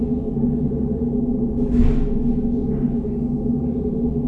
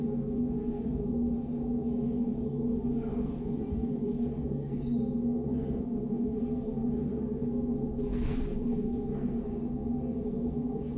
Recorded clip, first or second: first